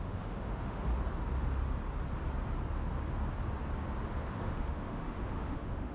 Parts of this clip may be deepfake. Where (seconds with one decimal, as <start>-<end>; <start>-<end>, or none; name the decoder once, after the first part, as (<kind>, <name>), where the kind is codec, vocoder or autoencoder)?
0.0-0.9 (autoencoder, DAC-VAE); 4.4-5.9